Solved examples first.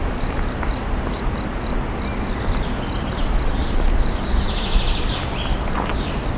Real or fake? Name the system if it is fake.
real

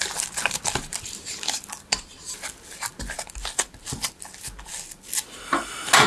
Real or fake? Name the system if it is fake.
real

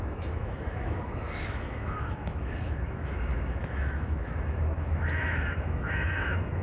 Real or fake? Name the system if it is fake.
fake, autoencoder, DAC-VAE